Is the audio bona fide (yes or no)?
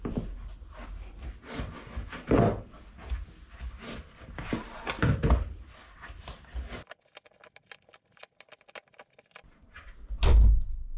yes